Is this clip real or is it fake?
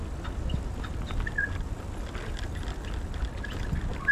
real